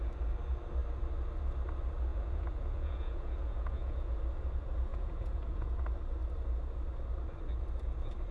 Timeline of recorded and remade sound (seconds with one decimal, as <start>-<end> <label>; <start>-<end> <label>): 0.0-2.1 recorded; 2.1-4.2 remade; 4.2-4.9 recorded; 4.9-5.8 remade; 5.8-8.3 recorded